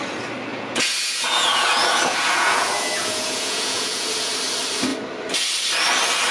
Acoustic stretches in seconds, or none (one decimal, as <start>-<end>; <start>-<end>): 0.0-0.5; 4.3-6.3